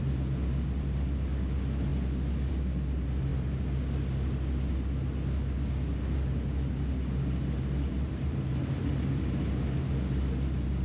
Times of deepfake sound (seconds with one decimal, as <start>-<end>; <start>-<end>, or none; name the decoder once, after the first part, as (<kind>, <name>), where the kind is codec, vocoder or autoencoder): none